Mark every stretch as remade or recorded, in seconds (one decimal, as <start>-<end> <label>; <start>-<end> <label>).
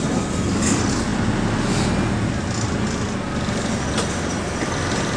0.0-5.2 recorded